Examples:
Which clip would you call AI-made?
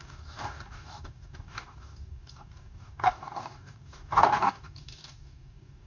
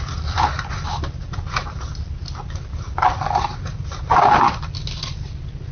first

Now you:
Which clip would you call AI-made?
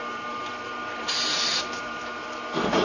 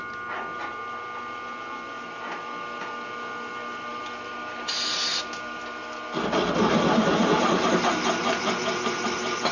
first